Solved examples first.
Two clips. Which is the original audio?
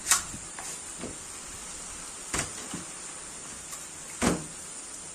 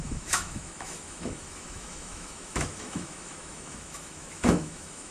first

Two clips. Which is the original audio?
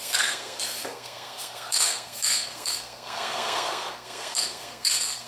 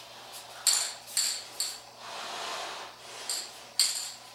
second